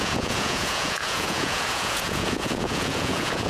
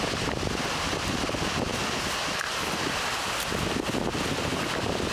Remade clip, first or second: first